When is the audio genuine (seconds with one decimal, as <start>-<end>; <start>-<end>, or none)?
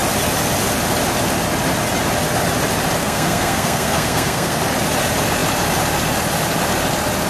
0.0-3.0; 4.6-7.3